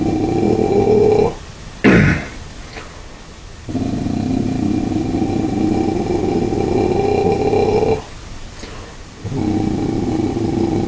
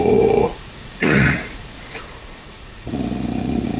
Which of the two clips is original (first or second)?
first